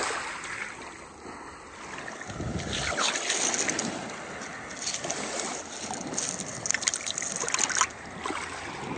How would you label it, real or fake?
real